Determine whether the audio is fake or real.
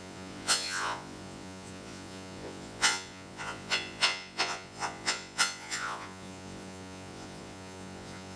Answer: fake